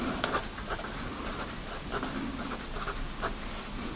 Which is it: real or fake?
real